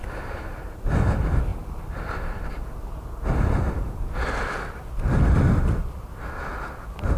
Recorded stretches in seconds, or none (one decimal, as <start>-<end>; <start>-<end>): 0.0-7.2